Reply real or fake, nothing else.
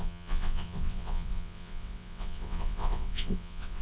fake